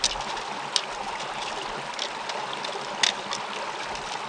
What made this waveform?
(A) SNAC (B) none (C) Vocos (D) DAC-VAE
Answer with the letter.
B